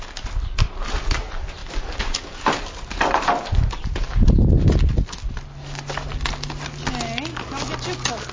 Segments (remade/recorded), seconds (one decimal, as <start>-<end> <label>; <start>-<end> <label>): 0.0-8.3 recorded